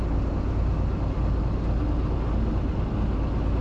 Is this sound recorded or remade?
recorded